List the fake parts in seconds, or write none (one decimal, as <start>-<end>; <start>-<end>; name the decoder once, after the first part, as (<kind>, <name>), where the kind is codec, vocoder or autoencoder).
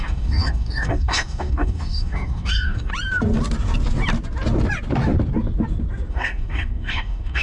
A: 0.0-2.9 (codec, DAC); 6.1-7.4